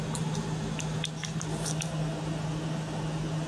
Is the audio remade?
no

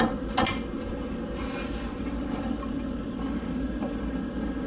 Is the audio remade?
no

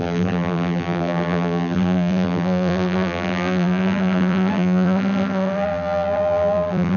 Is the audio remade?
yes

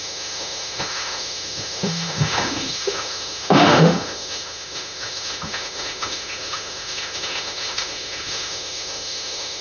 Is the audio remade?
yes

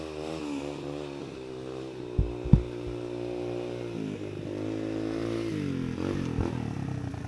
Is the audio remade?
no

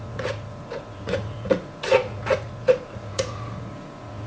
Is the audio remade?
yes